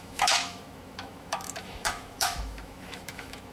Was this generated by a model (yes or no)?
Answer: yes